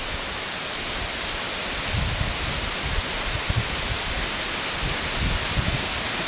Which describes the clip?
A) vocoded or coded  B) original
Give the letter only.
B